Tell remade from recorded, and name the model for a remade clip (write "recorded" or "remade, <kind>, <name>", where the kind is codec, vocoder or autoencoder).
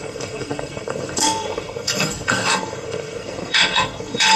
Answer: remade, codec, SNAC